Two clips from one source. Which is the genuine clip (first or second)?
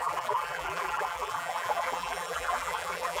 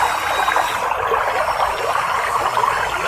second